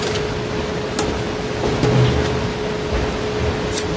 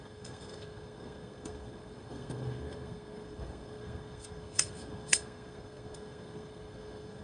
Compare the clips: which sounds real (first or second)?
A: first